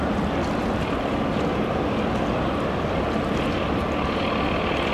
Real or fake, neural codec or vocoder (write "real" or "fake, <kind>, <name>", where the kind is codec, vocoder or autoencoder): real